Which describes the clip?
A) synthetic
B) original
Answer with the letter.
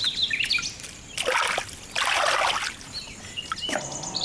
B